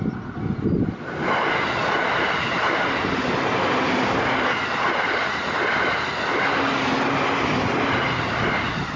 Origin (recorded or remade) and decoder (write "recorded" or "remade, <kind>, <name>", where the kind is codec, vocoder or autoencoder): recorded